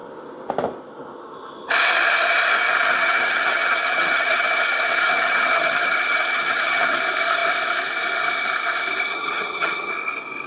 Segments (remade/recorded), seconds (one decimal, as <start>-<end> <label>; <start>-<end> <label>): 0.0-2.9 recorded; 2.9-7.0 remade; 7.0-9.1 recorded; 9.1-9.9 remade; 9.9-10.5 recorded